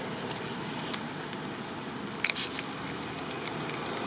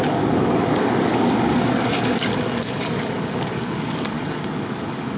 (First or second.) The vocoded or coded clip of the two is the second